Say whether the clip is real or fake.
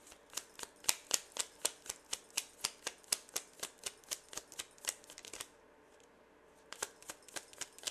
real